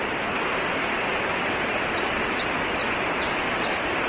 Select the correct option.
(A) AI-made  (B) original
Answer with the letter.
B